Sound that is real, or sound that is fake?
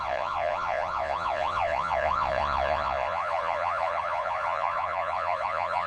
fake